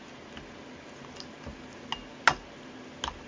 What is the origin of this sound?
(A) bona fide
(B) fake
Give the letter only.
A